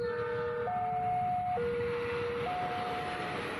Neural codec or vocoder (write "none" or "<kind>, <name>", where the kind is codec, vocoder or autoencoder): none